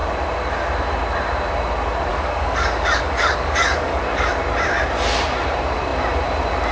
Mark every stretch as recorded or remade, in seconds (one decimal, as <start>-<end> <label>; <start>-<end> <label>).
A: 0.0-2.1 recorded; 2.1-4.3 remade; 4.3-6.7 recorded